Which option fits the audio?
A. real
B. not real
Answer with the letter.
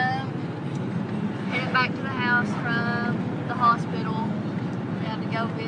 A